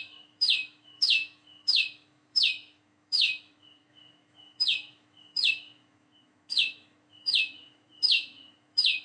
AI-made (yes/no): yes